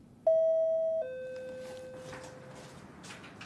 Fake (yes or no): no